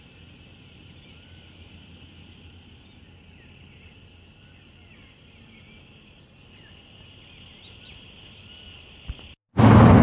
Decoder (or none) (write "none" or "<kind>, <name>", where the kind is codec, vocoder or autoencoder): none